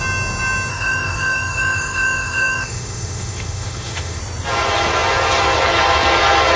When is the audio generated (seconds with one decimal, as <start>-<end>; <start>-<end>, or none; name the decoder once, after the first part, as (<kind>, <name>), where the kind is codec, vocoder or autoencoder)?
0.7-4.2 (autoencoder, DAC-VAE)